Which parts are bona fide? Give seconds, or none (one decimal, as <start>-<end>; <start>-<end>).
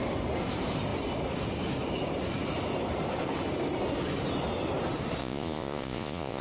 0.0-5.2